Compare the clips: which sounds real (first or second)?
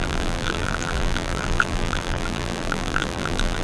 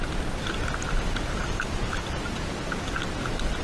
second